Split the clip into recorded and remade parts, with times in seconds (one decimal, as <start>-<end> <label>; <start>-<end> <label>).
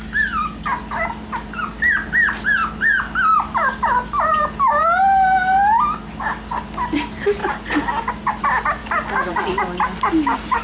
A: 0.0-10.6 recorded